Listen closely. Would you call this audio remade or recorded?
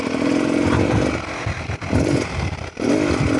recorded